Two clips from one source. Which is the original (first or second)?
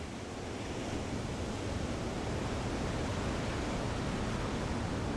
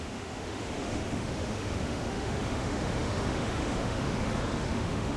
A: first